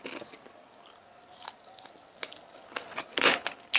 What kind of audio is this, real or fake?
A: real